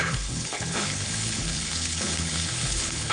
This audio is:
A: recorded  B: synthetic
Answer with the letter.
B